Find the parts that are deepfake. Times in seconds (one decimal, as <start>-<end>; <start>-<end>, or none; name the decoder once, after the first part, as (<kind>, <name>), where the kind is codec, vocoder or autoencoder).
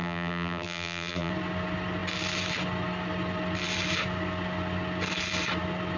0.0-1.3 (vocoder, BigVGAN v2)